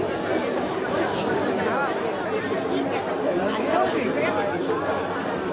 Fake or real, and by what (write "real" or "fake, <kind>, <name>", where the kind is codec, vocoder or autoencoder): real